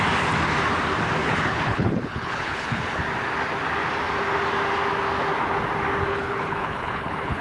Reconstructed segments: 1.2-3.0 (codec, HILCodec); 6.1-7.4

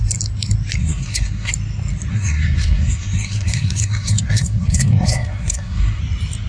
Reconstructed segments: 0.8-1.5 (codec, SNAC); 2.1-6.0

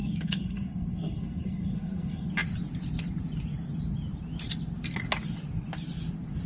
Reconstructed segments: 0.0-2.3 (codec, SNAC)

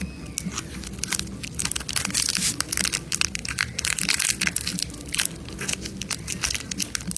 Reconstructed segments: 3.4-4.2 (vocoder, BigVGAN v2); 4.7-5.5